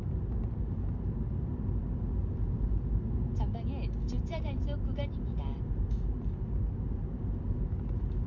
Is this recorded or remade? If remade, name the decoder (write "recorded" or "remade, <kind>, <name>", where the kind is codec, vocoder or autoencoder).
recorded